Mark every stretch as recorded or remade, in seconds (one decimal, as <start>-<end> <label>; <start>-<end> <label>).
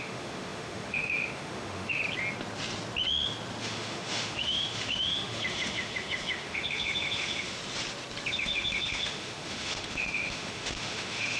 0.0-2.0 remade; 2.0-3.6 recorded; 3.6-7.6 remade; 7.6-8.3 recorded; 8.3-11.4 remade